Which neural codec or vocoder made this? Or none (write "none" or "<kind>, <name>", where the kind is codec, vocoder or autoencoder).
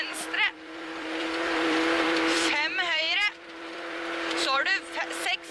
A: vocoder, BigVGAN v2